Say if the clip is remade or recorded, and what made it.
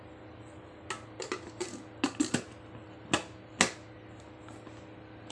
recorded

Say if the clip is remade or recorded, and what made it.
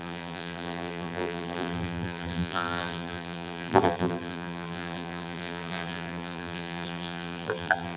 remade, vocoder, BigVGAN v2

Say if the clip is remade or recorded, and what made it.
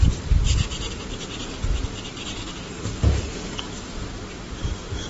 remade, vocoder, BigVGAN v2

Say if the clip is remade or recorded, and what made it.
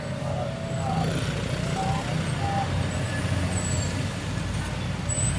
recorded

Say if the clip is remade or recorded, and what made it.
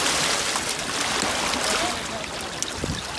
recorded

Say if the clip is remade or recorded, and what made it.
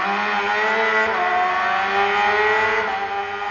recorded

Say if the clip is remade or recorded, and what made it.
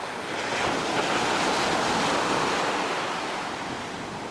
recorded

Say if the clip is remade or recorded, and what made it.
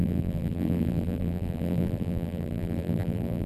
remade, vocoder, BigVGAN v2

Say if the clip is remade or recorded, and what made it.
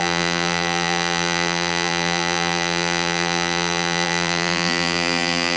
remade, vocoder, BigVGAN v2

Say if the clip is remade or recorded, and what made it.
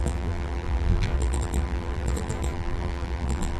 remade, vocoder, BigVGAN v2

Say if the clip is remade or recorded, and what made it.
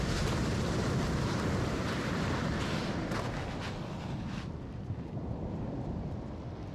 recorded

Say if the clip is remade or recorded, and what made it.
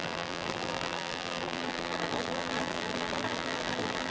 remade, vocoder, BigVGAN v2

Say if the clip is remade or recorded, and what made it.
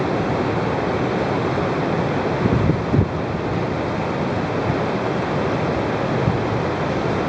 recorded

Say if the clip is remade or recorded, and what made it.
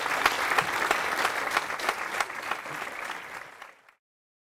recorded